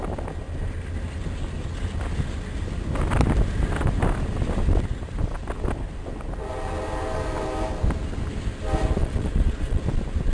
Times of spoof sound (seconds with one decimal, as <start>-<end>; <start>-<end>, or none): 9.0-9.8